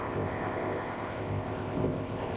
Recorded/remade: remade